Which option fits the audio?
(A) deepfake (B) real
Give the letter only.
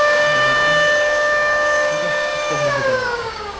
A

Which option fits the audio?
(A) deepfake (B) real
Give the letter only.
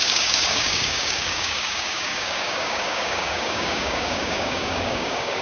A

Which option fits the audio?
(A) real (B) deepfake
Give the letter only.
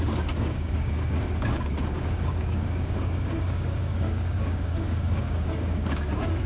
B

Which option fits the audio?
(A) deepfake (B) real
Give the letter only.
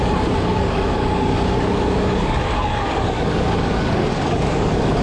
A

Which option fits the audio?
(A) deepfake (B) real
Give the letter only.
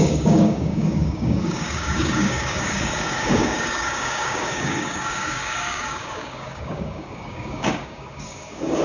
A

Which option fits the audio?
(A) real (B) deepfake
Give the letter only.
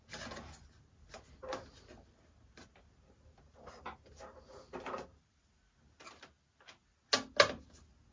A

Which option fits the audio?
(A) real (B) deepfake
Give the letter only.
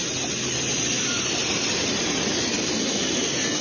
A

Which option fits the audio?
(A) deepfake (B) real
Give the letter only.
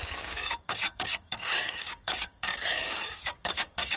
A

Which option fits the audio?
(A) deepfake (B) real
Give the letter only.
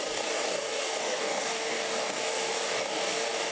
A